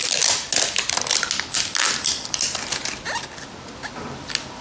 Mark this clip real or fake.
real